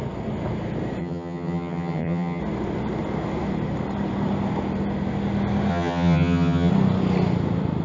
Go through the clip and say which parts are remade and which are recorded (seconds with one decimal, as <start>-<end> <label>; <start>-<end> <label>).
0.0-1.0 recorded; 1.0-2.4 remade; 2.4-5.7 recorded; 5.7-6.7 remade; 6.7-7.8 recorded